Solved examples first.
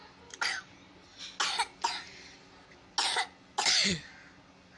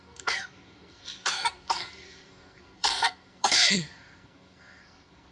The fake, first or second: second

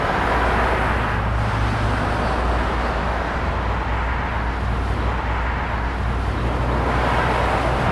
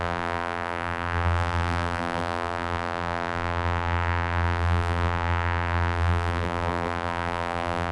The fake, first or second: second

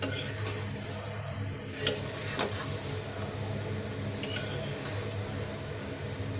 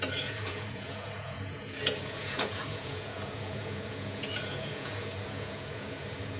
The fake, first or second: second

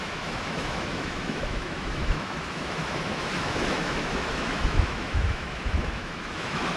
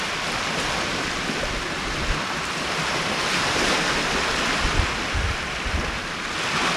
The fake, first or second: first